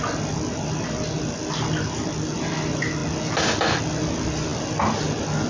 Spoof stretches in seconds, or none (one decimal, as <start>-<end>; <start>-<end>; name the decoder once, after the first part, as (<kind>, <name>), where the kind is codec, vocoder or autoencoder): 3.0-3.8 (vocoder, BigVGAN v2)